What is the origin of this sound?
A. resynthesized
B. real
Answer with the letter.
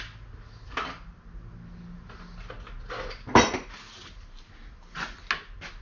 B